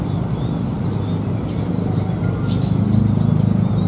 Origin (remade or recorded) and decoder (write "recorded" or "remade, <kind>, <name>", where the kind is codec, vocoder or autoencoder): recorded